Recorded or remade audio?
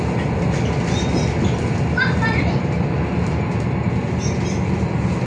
recorded